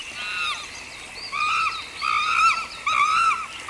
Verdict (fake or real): real